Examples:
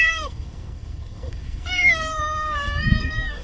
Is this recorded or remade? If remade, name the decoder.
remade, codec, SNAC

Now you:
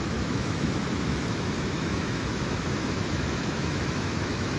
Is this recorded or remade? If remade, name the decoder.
remade, autoencoder, DAC-VAE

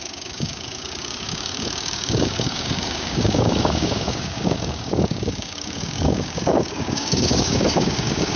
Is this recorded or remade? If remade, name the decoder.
remade, codec, DAC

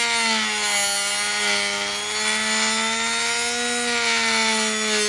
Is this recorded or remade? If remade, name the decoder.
recorded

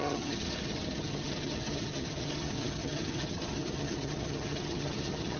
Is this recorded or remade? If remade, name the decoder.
remade, vocoder, HiFi-GAN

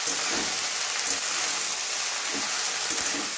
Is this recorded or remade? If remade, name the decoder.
recorded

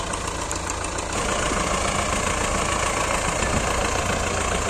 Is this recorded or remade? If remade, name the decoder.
recorded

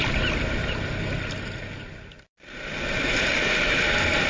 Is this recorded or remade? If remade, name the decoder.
recorded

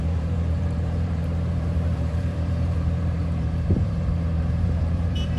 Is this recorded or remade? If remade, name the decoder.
remade, vocoder, BigVGAN v2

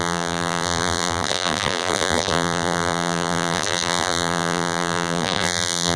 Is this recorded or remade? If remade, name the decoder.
remade, vocoder, BigVGAN v2